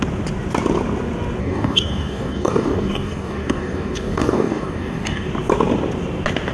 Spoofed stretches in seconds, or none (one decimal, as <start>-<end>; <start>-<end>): 1.4-5.3